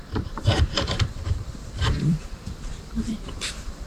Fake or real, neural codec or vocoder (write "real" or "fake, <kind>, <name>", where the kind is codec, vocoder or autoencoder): fake, vocoder, BigVGAN v2